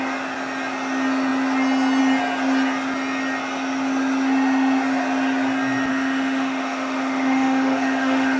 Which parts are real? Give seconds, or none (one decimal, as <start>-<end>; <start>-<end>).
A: 0.0-5.9